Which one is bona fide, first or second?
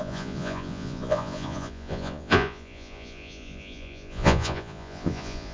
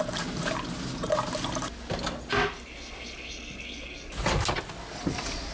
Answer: second